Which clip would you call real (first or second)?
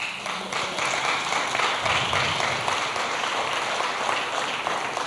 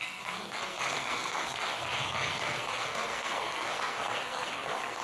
first